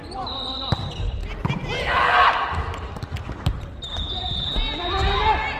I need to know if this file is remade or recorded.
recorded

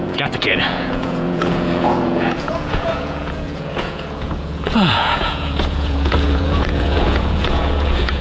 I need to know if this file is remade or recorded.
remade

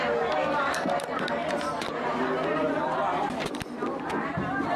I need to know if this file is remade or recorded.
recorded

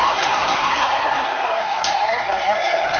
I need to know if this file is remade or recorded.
remade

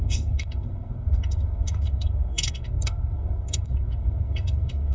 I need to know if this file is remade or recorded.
remade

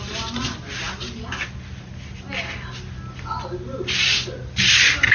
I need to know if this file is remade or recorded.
recorded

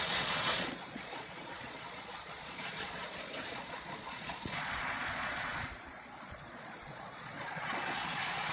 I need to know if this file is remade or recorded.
remade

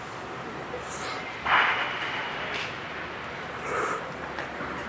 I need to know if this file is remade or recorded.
recorded